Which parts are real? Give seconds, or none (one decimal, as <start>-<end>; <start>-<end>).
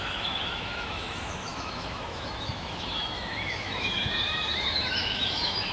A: none